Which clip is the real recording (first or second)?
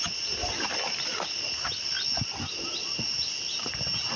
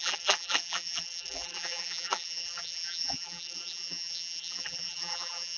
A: first